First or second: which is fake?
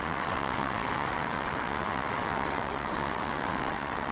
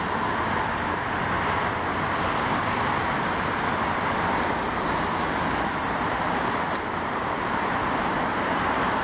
first